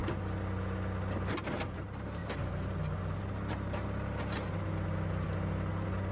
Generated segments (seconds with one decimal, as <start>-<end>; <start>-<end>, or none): none